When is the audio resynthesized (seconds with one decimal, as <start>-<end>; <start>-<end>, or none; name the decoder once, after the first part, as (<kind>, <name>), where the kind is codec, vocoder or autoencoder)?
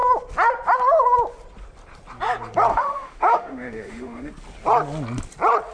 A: 2.7-4.3 (autoencoder, DAC-VAE)